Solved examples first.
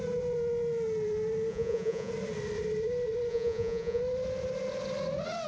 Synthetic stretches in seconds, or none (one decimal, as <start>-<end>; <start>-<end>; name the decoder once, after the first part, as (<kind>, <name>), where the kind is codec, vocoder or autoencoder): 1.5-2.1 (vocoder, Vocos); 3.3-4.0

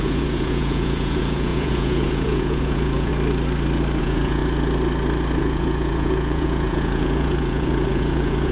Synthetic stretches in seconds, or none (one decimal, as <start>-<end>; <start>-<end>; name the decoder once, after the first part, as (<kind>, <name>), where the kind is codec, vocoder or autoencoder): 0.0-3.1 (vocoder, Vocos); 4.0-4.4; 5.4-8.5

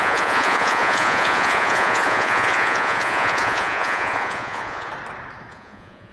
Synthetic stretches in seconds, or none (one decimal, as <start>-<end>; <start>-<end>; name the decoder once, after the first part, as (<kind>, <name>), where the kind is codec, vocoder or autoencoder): 0.0-4.9 (vocoder, Vocos); 5.5-6.1

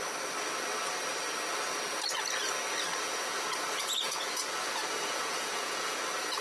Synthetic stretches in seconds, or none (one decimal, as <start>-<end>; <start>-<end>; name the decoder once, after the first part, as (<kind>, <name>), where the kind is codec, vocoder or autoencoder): 2.9-6.0 (vocoder, Vocos)

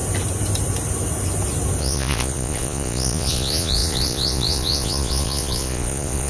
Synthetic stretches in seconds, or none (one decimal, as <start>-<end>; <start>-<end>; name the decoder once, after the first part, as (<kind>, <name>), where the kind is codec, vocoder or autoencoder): 1.8-6.3 (vocoder, Vocos)